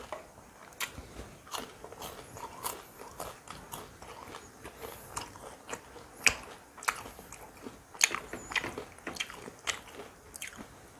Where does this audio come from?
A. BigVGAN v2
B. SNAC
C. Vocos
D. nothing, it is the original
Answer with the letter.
D